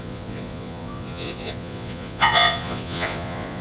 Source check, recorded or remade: remade